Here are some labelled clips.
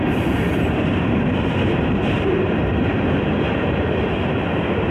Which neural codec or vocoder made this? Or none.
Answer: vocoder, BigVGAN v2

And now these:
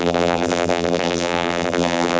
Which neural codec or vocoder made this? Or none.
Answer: vocoder, BigVGAN v2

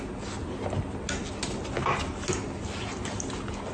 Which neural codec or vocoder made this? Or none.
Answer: none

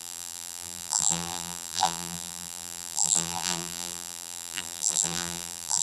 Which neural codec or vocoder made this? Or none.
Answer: vocoder, BigVGAN v2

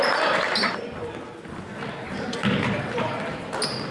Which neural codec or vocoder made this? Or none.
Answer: none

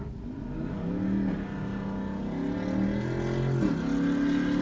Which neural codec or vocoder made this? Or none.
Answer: none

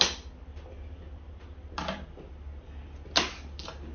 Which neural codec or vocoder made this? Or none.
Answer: none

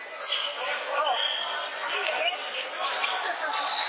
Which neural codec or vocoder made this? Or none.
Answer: none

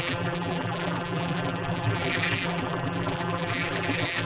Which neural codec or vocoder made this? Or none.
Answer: vocoder, BigVGAN v2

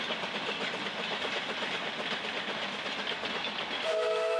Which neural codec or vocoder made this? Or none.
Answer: none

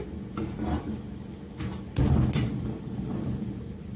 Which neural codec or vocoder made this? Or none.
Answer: none